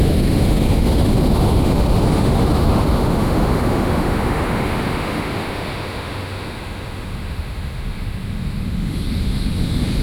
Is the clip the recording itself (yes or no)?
no